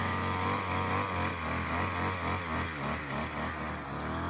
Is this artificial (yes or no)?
no